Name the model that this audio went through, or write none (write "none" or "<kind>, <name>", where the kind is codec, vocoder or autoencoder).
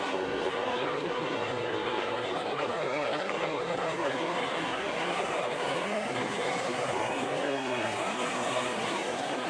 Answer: codec, SNAC